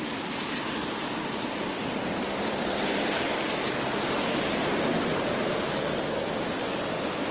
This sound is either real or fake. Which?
real